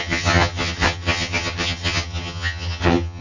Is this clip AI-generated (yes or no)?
yes